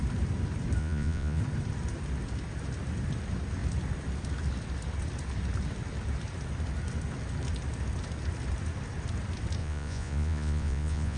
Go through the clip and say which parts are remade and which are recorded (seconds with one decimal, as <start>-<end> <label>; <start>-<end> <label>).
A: 0.0-0.8 recorded; 0.8-1.4 remade; 1.4-9.6 recorded; 9.6-11.2 remade